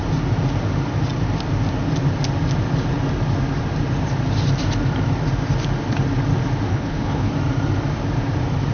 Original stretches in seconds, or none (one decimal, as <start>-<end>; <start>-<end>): 0.0-6.7; 7.3-8.7